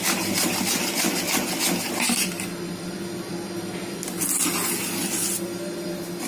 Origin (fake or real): real